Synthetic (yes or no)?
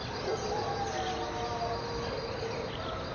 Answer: no